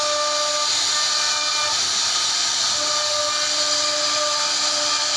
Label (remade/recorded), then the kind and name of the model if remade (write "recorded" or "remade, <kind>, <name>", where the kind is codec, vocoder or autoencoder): recorded